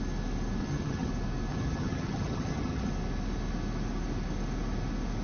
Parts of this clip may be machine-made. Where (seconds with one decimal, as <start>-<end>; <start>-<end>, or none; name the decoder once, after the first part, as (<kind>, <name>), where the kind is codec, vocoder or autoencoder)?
0.6-1.1 (vocoder, HiFi-GAN); 1.5-2.9